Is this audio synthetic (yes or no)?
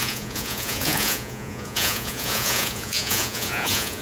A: yes